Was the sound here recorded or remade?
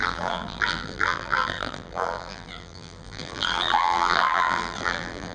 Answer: remade